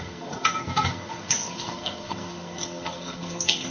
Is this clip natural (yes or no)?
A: no